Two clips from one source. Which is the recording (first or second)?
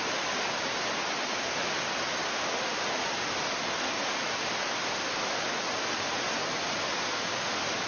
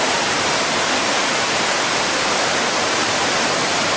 first